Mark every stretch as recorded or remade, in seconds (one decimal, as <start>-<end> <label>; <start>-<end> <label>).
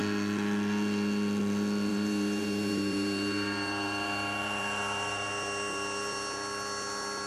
0.0-1.9 recorded; 1.9-5.3 remade; 5.3-7.3 recorded